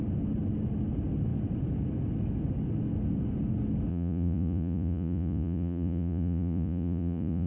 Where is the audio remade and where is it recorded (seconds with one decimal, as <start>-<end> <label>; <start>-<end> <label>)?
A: 0.0-3.9 recorded; 3.9-7.5 remade